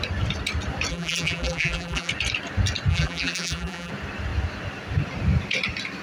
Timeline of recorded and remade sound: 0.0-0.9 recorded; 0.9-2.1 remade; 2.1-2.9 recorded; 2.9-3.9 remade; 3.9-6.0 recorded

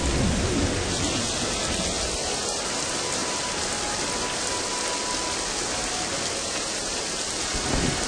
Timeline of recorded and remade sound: 0.0-8.1 recorded